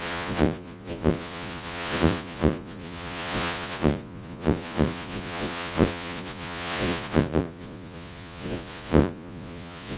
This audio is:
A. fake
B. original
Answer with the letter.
A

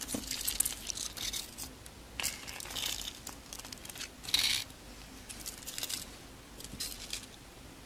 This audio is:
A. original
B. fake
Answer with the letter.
A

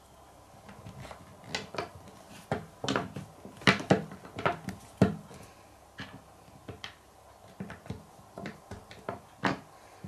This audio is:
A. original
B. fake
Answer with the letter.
A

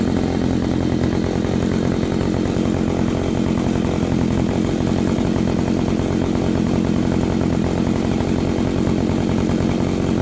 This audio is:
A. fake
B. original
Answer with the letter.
B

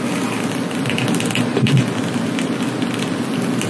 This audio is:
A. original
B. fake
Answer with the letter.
A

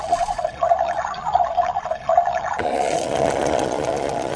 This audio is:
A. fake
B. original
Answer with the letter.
A